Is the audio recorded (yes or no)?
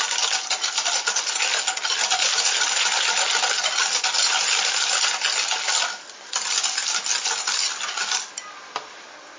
yes